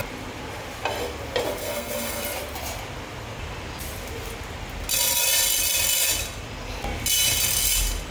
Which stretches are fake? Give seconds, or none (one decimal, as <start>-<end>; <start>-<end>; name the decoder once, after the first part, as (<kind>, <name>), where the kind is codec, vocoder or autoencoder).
1.6-2.2 (codec, SNAC)